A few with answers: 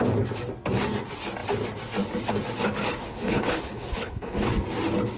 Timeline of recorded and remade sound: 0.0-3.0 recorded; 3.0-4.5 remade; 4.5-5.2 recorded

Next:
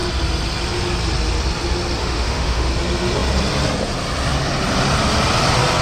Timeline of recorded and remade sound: 0.0-2.0 recorded; 2.0-2.7 remade; 2.7-5.8 recorded

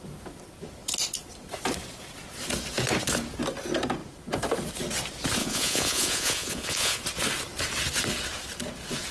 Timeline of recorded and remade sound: 0.0-5.4 recorded; 5.4-7.0 remade; 7.0-9.1 recorded

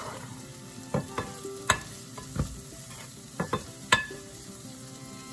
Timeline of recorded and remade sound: 0.0-0.5 remade; 0.5-2.8 recorded; 2.8-5.3 remade

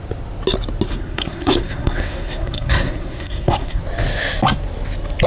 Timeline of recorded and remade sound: 0.0-0.9 recorded; 0.9-3.8 remade; 3.8-5.3 recorded

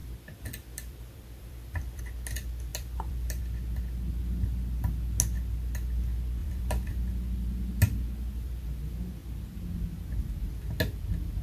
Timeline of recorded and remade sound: 0.0-2.0 remade; 2.0-2.7 recorded; 2.7-3.4 remade; 3.4-6.4 recorded; 6.4-6.9 remade; 6.9-11.4 recorded

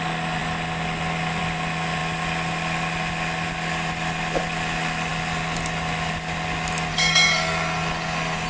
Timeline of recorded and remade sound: 0.0-6.9 recorded; 6.9-8.5 remade